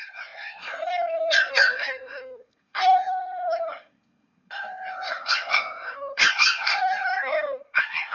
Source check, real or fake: fake